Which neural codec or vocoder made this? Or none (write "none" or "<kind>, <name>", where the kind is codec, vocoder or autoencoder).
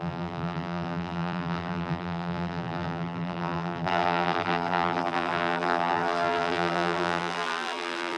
vocoder, BigVGAN v2